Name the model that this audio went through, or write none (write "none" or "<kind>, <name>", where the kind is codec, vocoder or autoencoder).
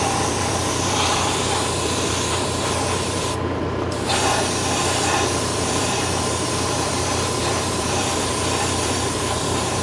vocoder, BigVGAN v2